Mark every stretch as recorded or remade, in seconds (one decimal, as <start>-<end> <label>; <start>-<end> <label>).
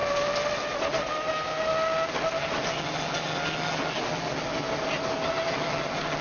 0.0-6.2 recorded